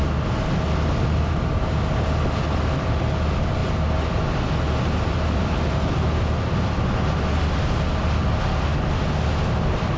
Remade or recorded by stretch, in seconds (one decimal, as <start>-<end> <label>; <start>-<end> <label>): 0.0-10.0 recorded